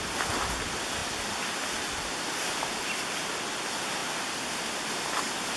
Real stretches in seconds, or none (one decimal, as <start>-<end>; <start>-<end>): 0.0-5.6